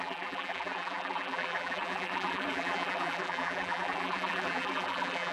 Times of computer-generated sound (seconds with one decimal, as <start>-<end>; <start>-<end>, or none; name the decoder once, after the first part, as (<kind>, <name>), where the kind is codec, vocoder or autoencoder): 0.0-5.3 (vocoder, BigVGAN v2)